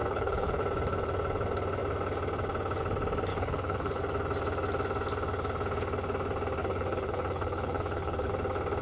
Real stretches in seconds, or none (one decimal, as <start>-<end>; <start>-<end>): 0.6-3.3; 4.0-6.6; 8.3-8.8